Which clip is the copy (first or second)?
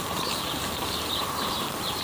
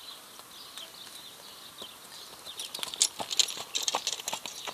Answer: first